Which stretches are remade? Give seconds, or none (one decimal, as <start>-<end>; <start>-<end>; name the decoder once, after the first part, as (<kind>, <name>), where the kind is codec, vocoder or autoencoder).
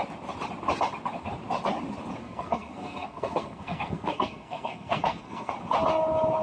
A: 2.2-5.5 (codec, SNAC)